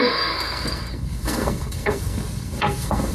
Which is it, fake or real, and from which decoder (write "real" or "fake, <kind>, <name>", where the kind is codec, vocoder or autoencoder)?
fake, codec, SNAC